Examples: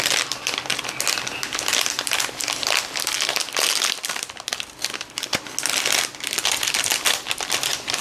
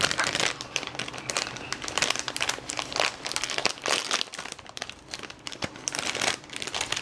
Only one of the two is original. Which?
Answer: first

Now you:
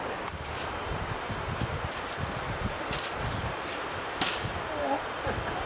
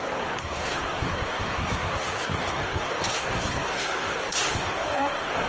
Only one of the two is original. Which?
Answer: first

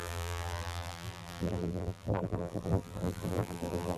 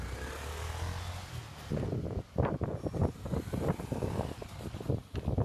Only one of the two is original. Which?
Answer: second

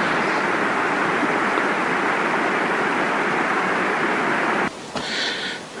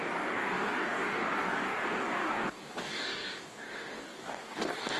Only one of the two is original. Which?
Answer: first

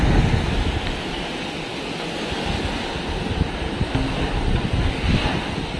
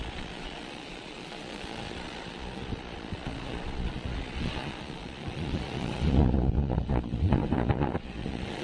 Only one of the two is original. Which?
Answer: first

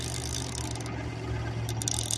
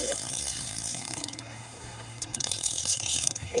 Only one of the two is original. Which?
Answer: first